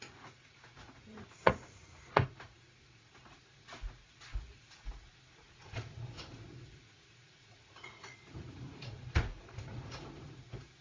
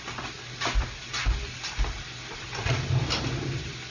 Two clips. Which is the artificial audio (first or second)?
first